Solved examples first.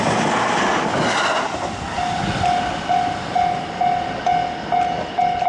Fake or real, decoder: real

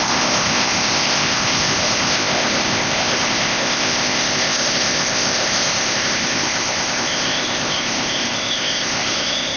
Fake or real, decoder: fake, codec, ZipCodec